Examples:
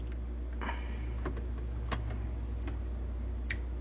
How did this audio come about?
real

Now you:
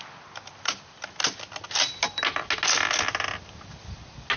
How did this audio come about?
real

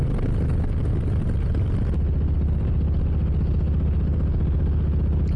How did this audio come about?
real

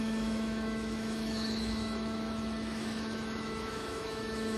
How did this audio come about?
fake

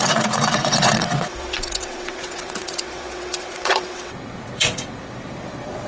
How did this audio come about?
fake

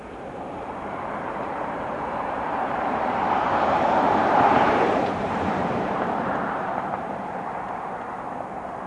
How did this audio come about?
fake